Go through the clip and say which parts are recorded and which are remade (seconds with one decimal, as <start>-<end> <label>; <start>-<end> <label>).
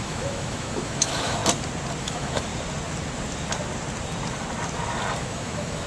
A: 0.0-1.4 remade; 1.4-2.0 recorded; 2.0-2.5 remade; 2.5-5.2 recorded; 5.2-5.9 remade